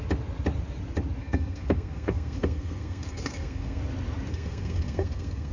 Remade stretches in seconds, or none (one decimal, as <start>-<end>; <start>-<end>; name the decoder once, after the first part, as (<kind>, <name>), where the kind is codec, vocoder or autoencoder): 1.2-3.8 (codec, SNAC); 4.3-5.5